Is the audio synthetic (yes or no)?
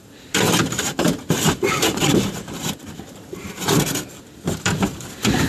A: yes